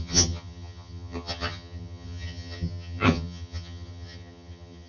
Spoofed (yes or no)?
yes